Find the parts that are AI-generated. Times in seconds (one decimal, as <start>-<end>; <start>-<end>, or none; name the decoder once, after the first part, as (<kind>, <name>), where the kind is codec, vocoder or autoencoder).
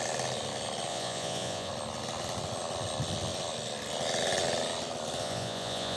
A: 0.9-1.7 (vocoder, Vocos); 5.2-6.0